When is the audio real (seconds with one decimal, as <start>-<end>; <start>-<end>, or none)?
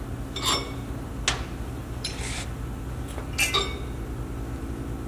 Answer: 0.0-5.1